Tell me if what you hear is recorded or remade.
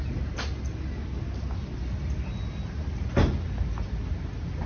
recorded